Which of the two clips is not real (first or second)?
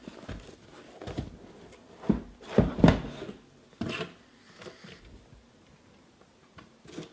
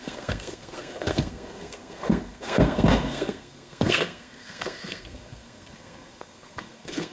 second